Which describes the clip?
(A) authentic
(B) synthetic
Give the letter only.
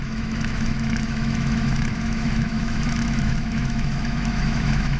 B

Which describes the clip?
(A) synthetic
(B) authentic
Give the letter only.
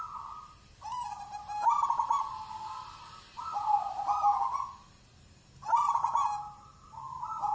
B